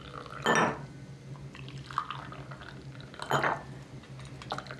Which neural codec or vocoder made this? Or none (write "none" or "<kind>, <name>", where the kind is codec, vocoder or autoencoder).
none